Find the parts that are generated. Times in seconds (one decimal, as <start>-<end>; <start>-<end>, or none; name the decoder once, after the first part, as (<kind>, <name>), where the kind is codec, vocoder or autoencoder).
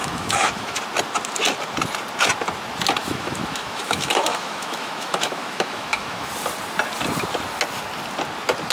0.0-0.8 (autoencoder, DAC-VAE); 3.0-6.3